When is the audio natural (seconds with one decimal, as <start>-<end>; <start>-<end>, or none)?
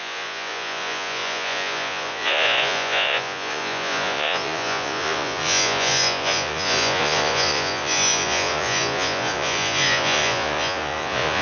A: none